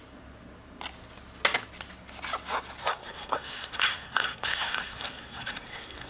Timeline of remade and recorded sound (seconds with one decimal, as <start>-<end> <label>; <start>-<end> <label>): 0.0-2.8 recorded; 2.8-6.1 remade